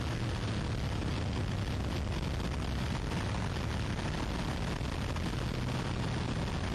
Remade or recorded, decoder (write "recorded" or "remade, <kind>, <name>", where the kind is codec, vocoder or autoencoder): recorded